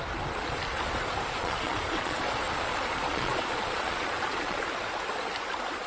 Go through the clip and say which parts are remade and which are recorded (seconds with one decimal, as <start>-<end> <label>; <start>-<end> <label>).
0.0-1.4 recorded; 1.4-2.2 remade; 2.2-3.1 recorded; 3.1-4.6 remade; 4.6-5.9 recorded